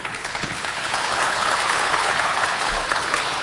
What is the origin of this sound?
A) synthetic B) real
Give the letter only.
A